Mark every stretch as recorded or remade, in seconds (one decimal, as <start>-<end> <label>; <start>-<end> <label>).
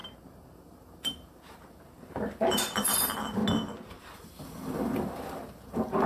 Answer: 0.0-3.4 remade; 3.4-4.0 recorded; 4.0-6.1 remade